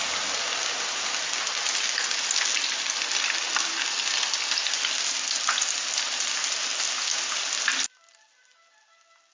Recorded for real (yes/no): yes